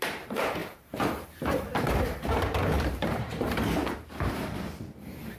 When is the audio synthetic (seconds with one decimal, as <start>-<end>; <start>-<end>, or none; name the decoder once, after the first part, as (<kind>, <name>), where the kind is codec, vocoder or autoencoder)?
0.0-5.4 (vocoder, BigVGAN v2)